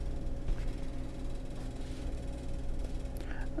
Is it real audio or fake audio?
real